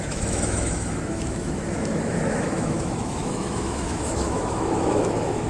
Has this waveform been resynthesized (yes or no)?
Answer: yes